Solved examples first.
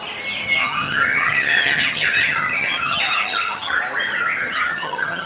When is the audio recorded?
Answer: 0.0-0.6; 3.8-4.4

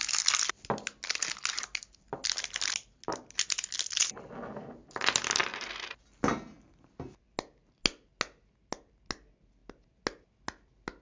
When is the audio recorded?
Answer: 0.0-11.0

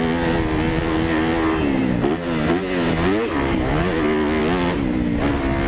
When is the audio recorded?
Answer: 0.0-5.7

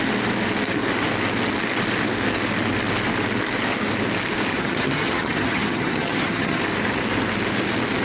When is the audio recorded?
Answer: 0.0-4.5; 6.6-8.0

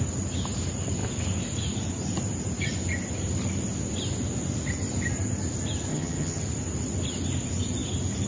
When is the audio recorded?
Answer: 0.0-5.9; 6.4-8.3

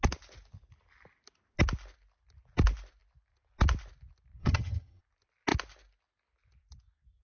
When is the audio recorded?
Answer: 0.0-4.4; 5.0-7.2

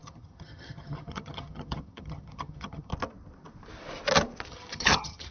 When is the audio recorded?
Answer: 2.9-4.5

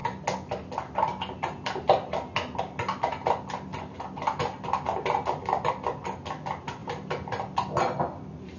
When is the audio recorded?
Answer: 0.0-8.6